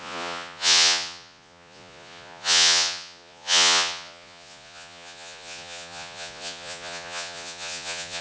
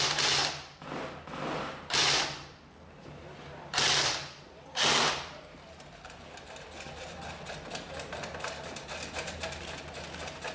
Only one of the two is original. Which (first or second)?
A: second